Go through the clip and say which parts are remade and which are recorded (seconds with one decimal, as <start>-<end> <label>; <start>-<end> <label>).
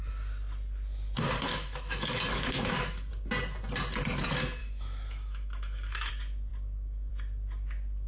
0.0-1.5 recorded; 1.5-3.1 remade; 3.1-4.6 recorded; 4.6-6.1 remade; 6.1-8.1 recorded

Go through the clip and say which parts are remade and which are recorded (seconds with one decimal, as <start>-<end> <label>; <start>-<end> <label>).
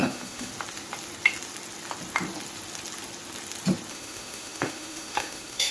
0.0-0.5 remade; 0.5-3.9 recorded; 3.9-5.7 remade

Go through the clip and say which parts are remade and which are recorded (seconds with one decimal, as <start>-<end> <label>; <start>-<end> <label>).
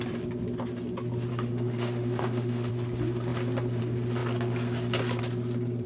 0.0-1.3 recorded; 1.3-2.7 remade; 2.7-5.9 recorded